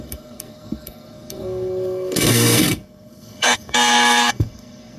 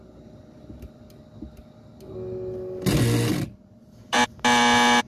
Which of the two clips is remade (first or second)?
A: first